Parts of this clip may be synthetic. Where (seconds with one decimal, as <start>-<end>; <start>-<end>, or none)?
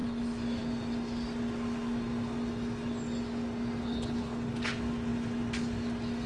3.8-4.5